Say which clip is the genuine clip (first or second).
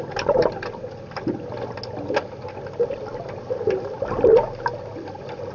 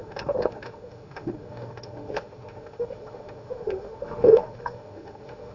first